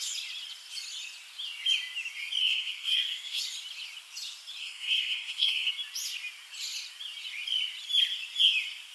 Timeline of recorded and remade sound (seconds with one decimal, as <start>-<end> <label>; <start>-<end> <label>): 0.0-2.4 recorded; 2.4-3.4 remade; 3.4-4.6 recorded; 4.6-5.7 remade; 5.7-8.9 recorded